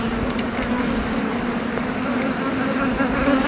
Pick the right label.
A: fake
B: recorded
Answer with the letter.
B